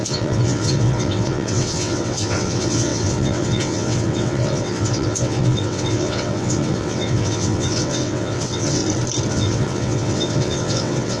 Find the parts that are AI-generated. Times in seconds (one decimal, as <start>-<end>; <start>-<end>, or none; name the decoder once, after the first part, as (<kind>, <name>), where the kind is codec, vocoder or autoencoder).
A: 0.0-8.8 (vocoder, WaveNeXt); 9.3-11.2